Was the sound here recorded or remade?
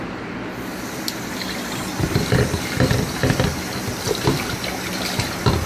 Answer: recorded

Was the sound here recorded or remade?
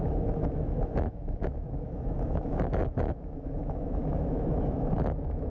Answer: remade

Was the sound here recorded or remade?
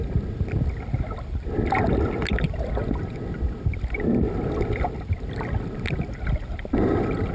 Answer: recorded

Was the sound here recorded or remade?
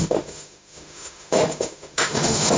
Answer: remade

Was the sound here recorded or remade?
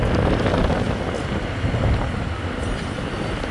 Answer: recorded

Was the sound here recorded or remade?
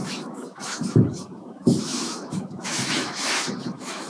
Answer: remade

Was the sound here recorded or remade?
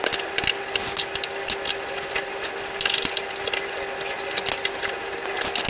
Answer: recorded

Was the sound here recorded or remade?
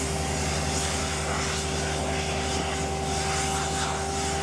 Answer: recorded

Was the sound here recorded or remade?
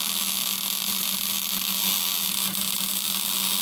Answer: recorded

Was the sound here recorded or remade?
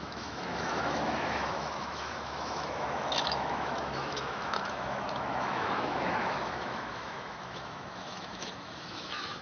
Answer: remade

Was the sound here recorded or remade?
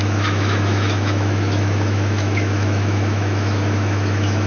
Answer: remade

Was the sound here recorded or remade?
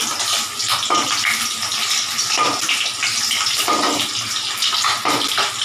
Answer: recorded